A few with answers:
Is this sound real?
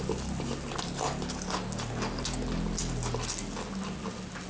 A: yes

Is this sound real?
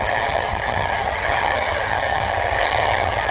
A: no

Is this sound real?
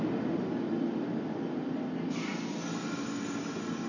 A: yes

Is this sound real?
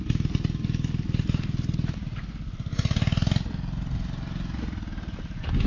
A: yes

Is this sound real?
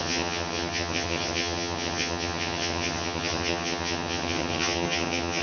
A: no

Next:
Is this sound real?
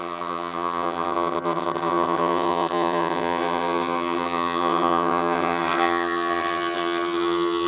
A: no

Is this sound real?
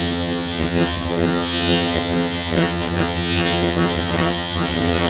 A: no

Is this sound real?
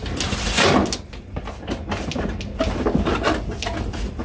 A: yes